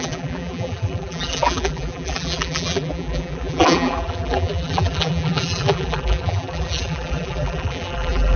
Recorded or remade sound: remade